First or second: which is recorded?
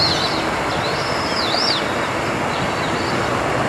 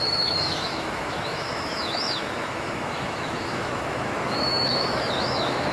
first